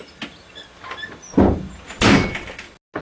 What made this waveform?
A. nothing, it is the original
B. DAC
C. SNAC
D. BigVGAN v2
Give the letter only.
A